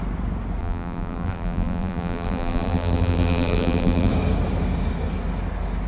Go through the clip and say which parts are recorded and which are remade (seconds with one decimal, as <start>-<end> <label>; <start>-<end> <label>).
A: 0.0-0.6 recorded; 0.6-4.1 remade; 4.1-5.9 recorded